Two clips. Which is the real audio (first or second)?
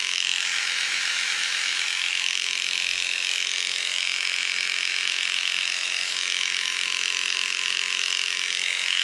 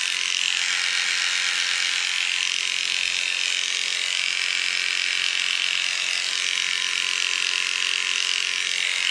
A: second